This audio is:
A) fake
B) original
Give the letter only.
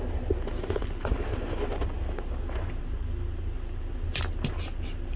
B